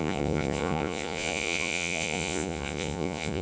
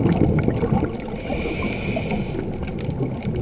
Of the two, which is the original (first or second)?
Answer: second